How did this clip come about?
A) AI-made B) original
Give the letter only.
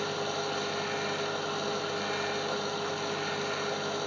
B